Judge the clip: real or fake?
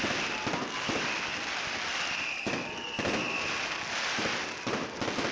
real